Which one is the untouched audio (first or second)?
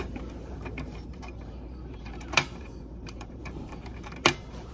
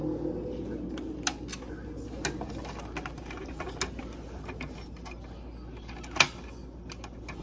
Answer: second